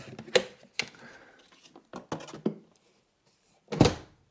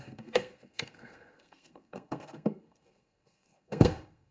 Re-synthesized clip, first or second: second